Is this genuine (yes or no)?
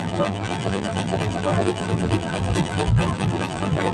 no